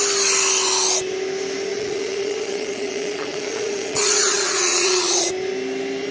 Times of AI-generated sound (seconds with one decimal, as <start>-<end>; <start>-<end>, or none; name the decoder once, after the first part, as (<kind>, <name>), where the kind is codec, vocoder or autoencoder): 1.7-5.3 (vocoder, Vocos)